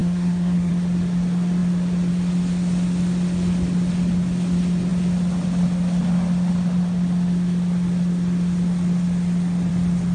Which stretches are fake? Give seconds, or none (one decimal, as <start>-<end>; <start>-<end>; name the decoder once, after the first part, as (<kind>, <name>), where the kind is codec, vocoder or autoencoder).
0.0-0.7 (codec, SNAC)